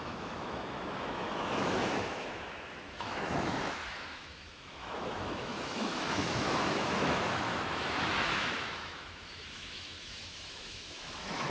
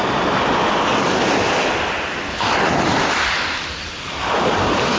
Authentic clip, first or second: second